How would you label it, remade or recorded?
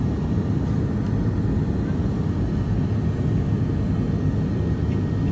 recorded